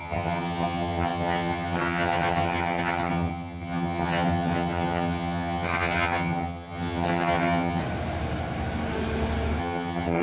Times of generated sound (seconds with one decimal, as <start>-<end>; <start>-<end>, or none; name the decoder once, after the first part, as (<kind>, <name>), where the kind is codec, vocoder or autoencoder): 0.0-7.8 (vocoder, HiFi-GAN); 9.6-10.2